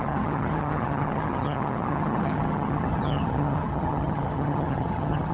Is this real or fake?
fake